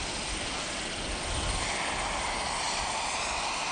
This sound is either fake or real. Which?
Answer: real